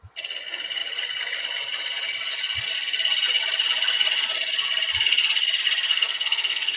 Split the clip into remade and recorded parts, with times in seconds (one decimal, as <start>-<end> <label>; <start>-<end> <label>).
0.0-5.9 recorded; 5.9-6.8 remade